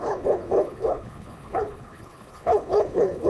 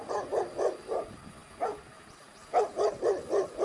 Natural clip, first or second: second